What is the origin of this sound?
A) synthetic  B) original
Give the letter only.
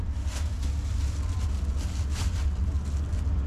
B